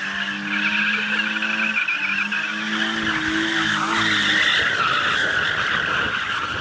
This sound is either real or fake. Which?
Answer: real